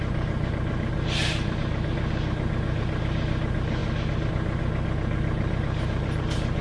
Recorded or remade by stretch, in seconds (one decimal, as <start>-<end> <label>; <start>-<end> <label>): 0.0-3.8 remade; 3.8-4.3 recorded; 4.3-6.6 remade